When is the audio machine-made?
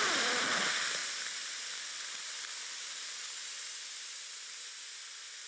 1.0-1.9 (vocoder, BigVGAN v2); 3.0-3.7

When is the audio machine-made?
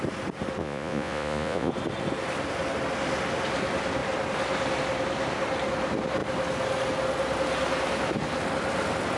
0.6-1.7 (vocoder, Vocos)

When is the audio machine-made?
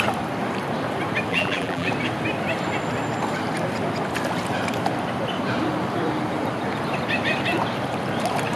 1.3-1.9 (vocoder, BigVGAN v2)